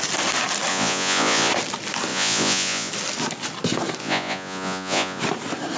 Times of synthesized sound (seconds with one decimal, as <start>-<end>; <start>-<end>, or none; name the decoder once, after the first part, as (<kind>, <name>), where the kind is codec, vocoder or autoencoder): 0.7-1.5 (vocoder, Vocos); 2.1-2.9; 4.0-5.2